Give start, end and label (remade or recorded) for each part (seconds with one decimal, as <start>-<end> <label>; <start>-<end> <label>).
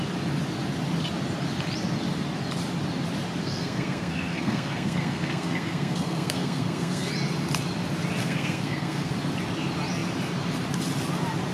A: 0.0-3.4 recorded; 3.4-7.1 remade; 7.1-8.2 recorded; 8.2-9.1 remade; 9.1-11.5 recorded